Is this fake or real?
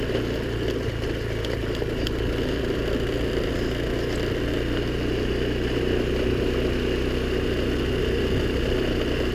real